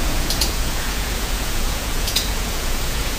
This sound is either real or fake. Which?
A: fake